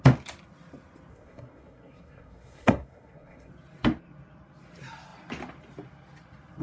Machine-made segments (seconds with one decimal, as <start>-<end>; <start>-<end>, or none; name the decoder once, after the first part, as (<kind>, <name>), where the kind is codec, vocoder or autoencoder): 1.1-3.5 (codec, SNAC)